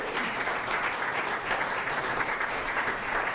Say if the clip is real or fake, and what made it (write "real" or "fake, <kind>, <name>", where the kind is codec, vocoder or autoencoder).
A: fake, vocoder, BigVGAN v2